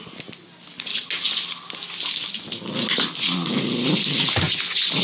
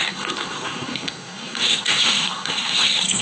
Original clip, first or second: first